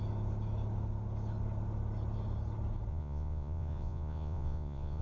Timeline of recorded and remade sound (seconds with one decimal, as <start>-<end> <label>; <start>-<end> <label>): 0.0-2.9 recorded; 2.9-5.0 remade